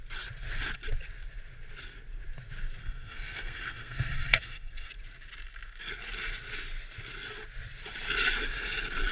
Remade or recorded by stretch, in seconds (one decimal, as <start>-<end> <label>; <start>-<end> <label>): 0.0-2.8 recorded; 2.8-4.9 remade; 4.9-9.1 recorded